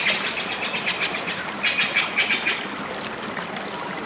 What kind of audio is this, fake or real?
real